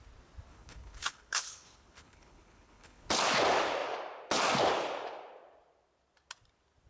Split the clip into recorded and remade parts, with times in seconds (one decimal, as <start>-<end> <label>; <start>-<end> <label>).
0.0-0.5 recorded; 0.5-3.1 remade; 3.1-6.9 recorded